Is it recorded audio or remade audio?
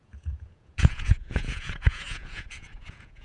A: remade